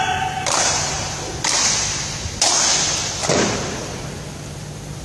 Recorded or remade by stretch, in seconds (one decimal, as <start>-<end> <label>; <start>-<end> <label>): 0.0-5.0 recorded